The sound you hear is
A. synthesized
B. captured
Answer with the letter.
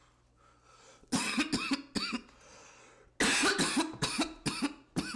B